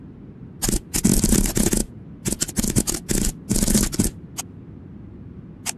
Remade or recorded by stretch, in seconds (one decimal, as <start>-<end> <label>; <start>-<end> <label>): 0.0-5.8 recorded